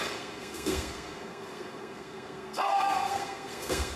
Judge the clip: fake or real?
fake